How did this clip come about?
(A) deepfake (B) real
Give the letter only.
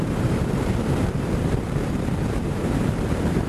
A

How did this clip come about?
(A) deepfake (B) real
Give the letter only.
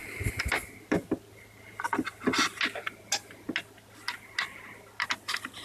B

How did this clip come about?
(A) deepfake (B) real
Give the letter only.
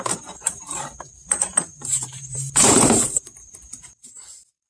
A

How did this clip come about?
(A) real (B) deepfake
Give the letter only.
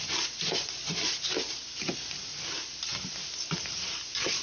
B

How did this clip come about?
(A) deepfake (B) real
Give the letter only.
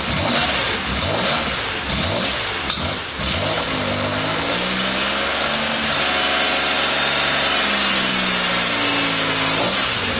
B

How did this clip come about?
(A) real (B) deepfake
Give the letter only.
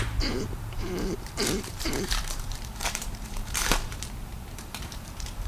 B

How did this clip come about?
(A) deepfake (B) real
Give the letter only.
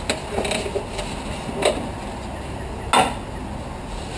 B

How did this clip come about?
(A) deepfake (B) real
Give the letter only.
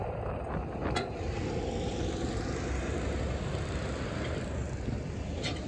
B